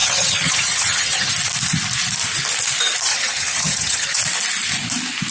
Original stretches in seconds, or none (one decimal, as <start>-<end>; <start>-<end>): 1.3-3.1; 4.2-5.3